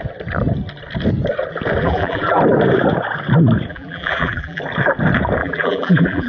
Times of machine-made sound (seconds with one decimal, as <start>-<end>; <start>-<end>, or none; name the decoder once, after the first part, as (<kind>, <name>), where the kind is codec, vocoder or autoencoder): 1.8-2.4 (vocoder, BigVGAN v2); 3.7-4.6; 5.4-6.3